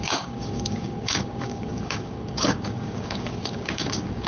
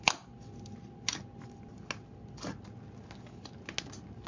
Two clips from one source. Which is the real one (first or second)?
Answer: second